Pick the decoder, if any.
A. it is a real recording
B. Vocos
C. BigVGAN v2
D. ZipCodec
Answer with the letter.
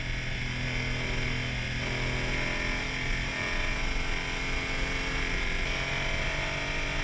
A